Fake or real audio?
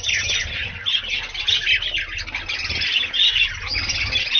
real